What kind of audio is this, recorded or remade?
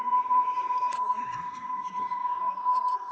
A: remade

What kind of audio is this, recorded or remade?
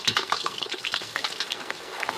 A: remade